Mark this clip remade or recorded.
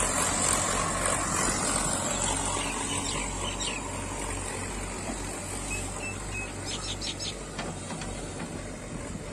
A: recorded